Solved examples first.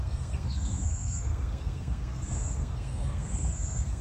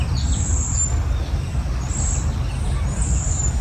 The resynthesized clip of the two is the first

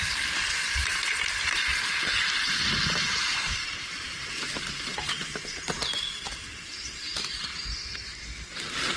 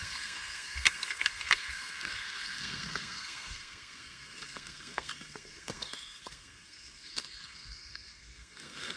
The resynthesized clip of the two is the second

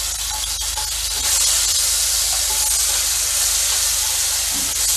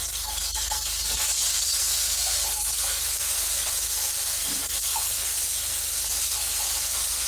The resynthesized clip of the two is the second